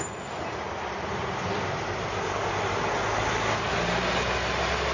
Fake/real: real